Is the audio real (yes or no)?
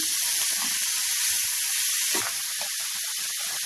yes